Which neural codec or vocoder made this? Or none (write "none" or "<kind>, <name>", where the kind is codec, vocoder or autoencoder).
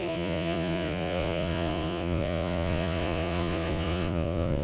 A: vocoder, Vocos